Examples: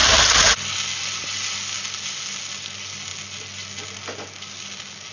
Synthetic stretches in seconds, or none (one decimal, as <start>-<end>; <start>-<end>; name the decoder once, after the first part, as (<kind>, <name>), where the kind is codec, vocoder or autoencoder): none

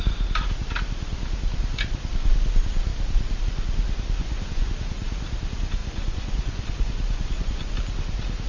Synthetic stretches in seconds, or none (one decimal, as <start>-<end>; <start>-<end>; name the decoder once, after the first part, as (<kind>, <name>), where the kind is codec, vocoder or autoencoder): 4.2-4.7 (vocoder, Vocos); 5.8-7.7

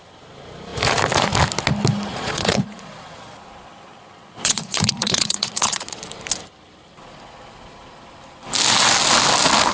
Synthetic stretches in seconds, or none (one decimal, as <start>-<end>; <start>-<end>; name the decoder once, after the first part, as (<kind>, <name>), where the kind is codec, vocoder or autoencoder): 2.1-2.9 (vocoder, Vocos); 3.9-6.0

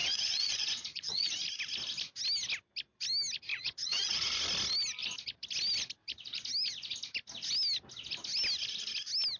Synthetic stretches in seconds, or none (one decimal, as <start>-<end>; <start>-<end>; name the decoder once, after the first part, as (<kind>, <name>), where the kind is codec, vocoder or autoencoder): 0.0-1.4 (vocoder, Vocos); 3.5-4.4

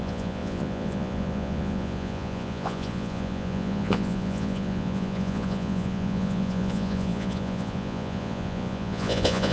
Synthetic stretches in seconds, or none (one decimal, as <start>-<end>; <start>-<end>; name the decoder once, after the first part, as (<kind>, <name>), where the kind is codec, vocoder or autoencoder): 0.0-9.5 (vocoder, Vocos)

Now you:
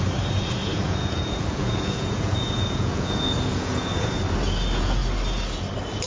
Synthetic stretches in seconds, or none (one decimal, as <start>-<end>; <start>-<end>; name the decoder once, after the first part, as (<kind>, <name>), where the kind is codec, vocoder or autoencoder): 0.6-4.2 (vocoder, Vocos)